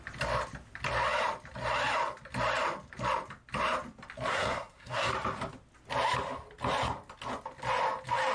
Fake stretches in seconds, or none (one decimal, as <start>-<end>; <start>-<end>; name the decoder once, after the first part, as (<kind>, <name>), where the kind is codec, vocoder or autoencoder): 4.3-5.1 (codec, SNAC)